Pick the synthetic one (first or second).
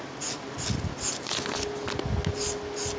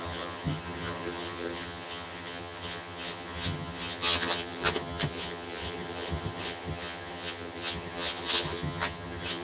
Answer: second